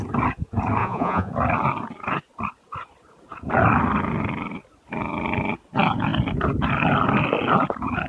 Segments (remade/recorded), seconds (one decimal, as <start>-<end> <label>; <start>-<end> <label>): 0.0-0.8 recorded; 0.8-1.3 remade; 1.3-8.1 recorded